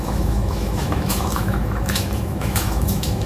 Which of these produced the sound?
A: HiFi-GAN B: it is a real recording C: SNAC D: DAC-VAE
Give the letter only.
D